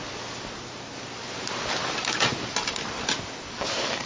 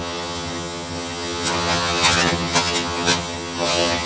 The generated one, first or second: second